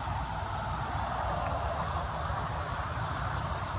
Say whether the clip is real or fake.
real